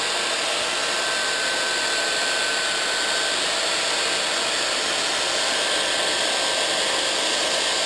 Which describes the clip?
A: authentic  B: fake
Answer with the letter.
A